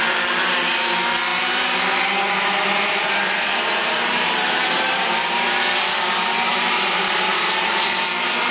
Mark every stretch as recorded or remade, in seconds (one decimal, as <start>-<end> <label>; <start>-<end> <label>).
0.0-1.3 recorded; 1.3-5.4 remade; 5.4-6.5 recorded; 6.5-7.7 remade; 7.7-8.5 recorded